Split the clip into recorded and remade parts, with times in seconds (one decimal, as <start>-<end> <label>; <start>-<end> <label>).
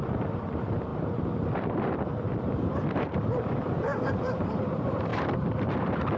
0.0-6.2 remade